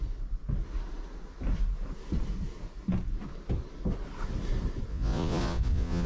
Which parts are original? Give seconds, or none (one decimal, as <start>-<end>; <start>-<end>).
0.0-4.9